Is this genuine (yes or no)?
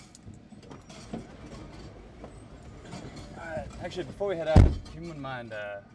yes